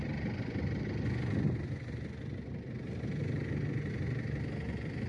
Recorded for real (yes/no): yes